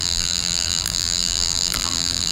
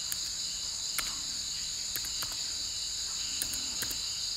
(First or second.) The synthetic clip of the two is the first